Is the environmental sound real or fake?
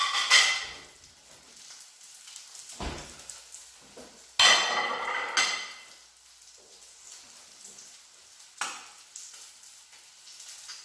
real